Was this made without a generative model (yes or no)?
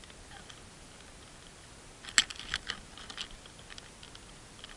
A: yes